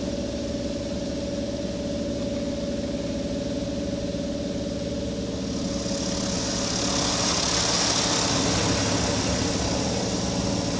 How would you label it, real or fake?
real